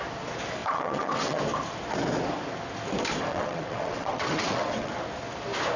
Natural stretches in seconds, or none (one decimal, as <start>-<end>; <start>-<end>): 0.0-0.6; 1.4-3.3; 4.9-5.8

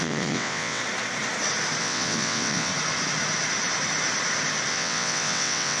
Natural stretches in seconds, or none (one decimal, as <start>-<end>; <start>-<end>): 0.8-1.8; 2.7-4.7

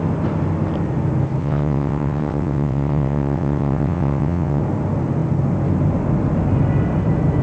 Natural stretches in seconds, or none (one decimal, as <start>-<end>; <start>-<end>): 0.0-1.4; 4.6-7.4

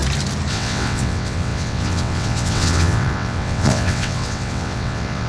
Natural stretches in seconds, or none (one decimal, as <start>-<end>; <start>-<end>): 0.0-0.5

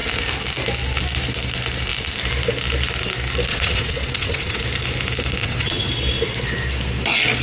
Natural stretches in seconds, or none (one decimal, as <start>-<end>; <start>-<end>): 0.0-3.5; 4.6-5.4; 5.9-7.4

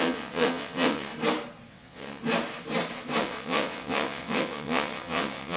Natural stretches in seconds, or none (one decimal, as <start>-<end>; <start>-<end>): 1.1-1.7; 2.2-3.2

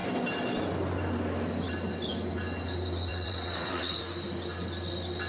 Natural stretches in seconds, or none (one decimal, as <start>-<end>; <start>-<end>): 0.0-3.1; 4.0-5.3